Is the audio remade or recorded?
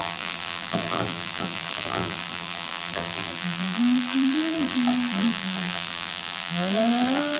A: remade